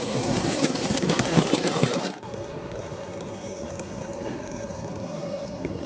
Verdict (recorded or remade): remade